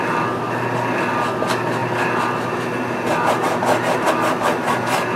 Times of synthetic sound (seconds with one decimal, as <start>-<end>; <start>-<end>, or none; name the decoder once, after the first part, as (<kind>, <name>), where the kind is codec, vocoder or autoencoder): none